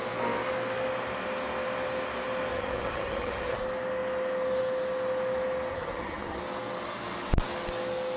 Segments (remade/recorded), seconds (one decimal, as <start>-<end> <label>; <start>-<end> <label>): 0.0-2.5 recorded; 2.5-3.6 remade; 3.6-5.7 recorded; 5.7-6.4 remade; 6.4-8.2 recorded